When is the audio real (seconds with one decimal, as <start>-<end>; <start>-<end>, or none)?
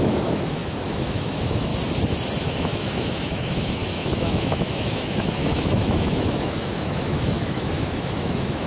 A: 1.7-2.4